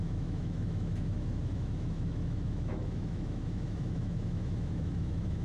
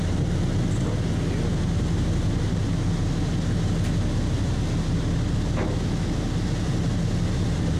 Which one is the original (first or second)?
second